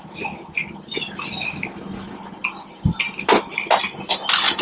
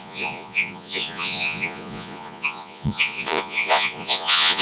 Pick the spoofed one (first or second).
second